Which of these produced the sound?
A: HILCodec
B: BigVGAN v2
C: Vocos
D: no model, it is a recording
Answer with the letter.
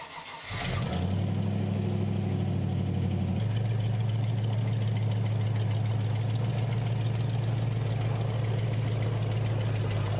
D